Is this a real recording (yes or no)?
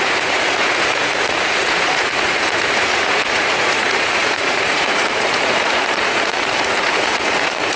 no